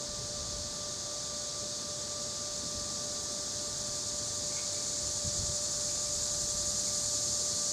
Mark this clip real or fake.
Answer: real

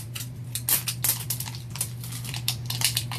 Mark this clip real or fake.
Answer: fake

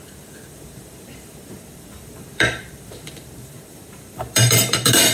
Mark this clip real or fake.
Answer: fake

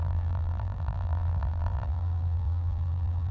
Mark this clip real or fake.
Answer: fake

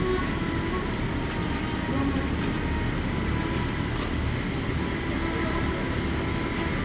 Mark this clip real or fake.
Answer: fake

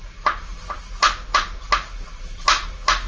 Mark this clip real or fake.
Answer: real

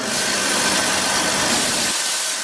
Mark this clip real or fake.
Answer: real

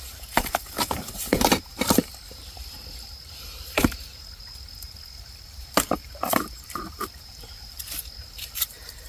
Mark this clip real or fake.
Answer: fake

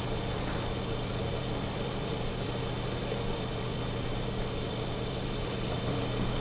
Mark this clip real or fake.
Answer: fake